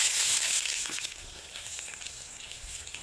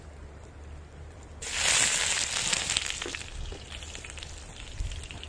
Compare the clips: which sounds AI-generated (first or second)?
first